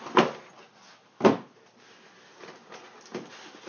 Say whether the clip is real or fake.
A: real